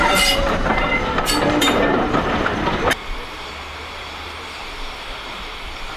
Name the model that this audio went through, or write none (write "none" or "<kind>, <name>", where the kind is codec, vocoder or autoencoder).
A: vocoder, BigVGAN v2